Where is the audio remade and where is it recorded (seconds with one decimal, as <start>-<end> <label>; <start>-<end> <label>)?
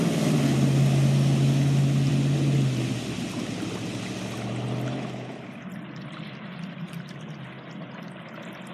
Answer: 0.0-8.7 recorded